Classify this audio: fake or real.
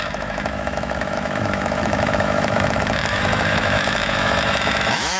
fake